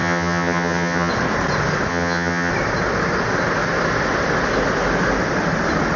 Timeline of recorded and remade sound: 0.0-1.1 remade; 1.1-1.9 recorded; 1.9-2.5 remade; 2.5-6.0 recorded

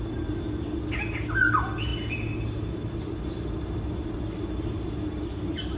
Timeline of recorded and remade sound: 0.0-5.8 recorded

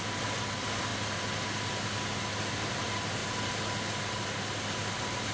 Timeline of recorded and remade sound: 0.0-0.9 remade; 0.9-2.5 recorded; 2.5-3.2 remade; 3.2-4.6 recorded; 4.6-5.3 remade

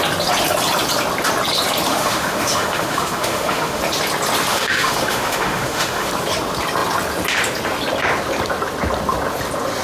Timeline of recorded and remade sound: 0.0-1.9 recorded; 1.9-3.8 remade; 3.8-4.5 recorded; 4.5-6.1 remade; 6.1-9.8 recorded

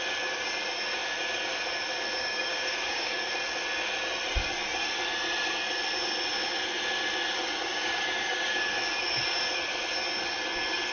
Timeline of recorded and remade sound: 0.0-2.2 recorded; 2.2-3.3 remade; 3.3-7.4 recorded; 7.4-8.6 remade; 8.6-10.9 recorded

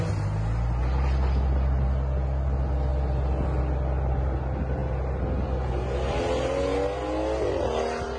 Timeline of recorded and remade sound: 0.0-8.2 recorded

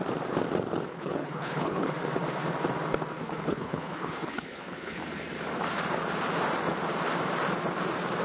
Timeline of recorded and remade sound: 0.0-0.9 recorded; 0.9-1.9 remade; 1.9-3.2 recorded; 3.2-5.0 remade; 5.0-8.2 recorded